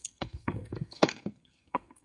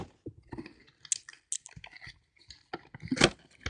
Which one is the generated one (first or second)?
first